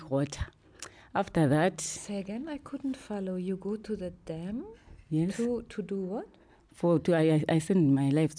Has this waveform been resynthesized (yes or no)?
no